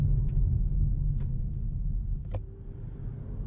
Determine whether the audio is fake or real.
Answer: real